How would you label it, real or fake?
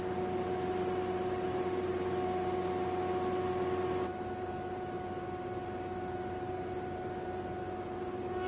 real